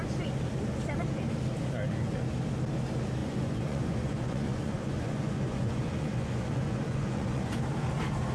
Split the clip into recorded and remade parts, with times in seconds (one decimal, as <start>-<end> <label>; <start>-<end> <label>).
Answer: 0.0-3.2 recorded; 3.2-7.6 remade; 7.6-8.3 recorded